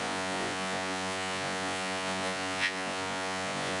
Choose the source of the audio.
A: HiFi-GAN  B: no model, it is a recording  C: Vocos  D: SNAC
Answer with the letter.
C